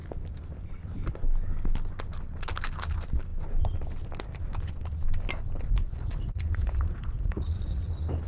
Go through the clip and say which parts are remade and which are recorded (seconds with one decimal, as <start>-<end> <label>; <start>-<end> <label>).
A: 0.0-5.8 recorded; 5.8-7.9 remade; 7.9-8.3 recorded